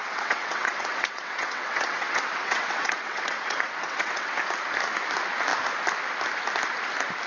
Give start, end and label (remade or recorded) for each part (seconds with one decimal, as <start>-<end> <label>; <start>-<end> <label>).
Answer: 0.0-4.4 remade; 4.4-7.3 recorded